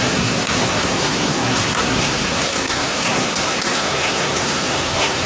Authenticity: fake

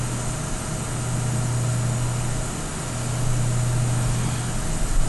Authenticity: real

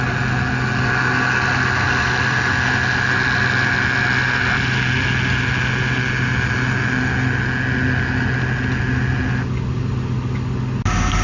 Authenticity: real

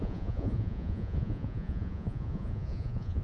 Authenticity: fake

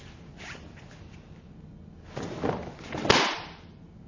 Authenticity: real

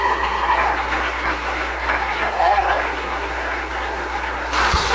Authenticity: fake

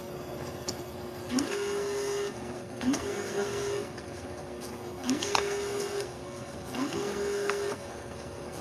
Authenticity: fake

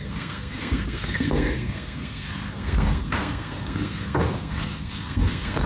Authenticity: fake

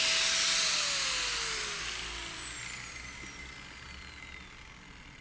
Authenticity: real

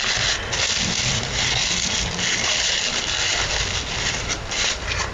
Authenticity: real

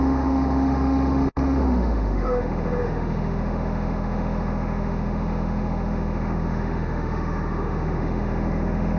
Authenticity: fake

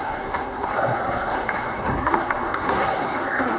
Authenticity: fake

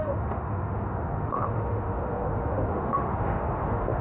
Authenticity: fake